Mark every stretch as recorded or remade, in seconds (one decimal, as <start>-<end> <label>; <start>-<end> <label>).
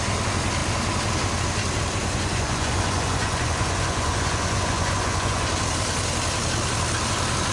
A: 0.0-2.0 recorded; 2.0-5.5 remade; 5.5-7.5 recorded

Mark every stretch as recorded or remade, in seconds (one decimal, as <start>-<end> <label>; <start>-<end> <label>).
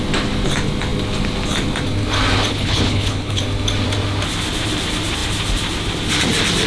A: 0.0-2.5 recorded; 2.5-3.4 remade; 3.4-6.7 recorded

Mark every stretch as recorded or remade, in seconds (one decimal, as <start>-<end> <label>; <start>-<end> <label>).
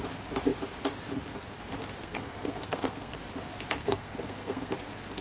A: 0.0-2.0 recorded; 2.0-3.2 remade; 3.2-3.8 recorded; 3.8-4.7 remade; 4.7-5.2 recorded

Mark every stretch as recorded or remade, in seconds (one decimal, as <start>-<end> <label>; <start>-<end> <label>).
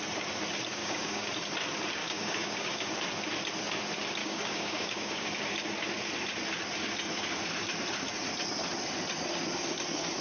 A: 0.0-0.8 recorded; 0.8-1.3 remade; 1.3-2.0 recorded; 2.0-2.9 remade; 2.9-4.2 recorded; 4.2-5.3 remade; 5.3-10.2 recorded